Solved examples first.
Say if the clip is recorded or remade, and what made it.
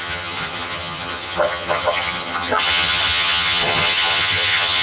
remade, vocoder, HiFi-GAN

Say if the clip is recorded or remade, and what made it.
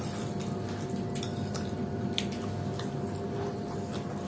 recorded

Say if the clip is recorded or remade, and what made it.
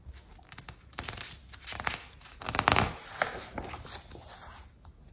recorded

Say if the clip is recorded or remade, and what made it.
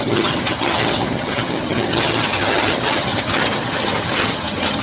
remade, vocoder, HiFi-GAN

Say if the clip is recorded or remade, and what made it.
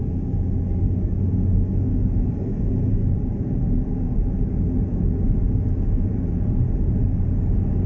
recorded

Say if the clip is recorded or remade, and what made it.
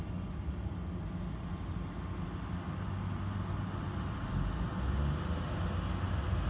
recorded